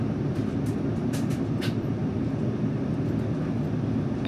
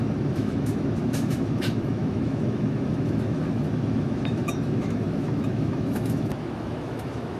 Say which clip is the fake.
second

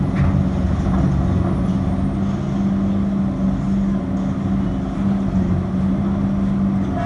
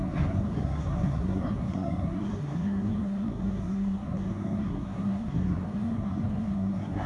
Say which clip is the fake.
second